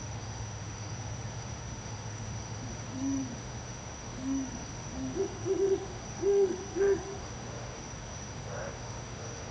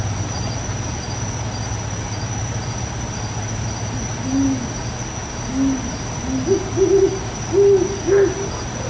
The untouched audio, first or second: second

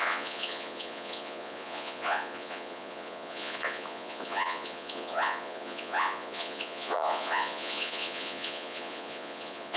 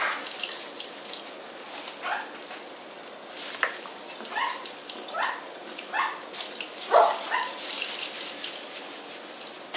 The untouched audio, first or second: second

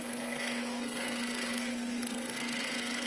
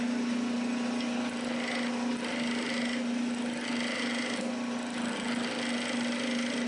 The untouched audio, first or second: second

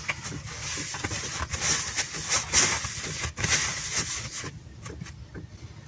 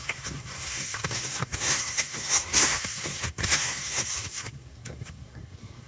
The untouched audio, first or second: first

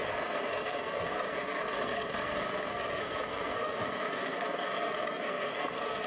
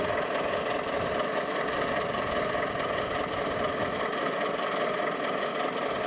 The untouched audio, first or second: second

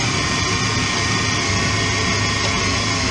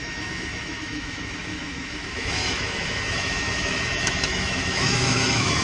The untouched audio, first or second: first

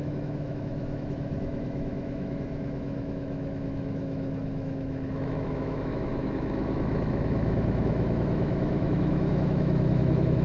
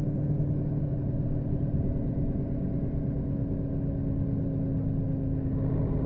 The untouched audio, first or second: second